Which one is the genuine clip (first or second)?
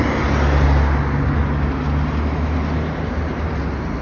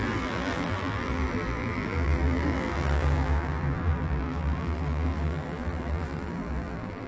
first